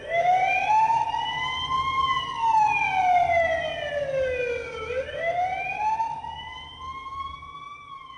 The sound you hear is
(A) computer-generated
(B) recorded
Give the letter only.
B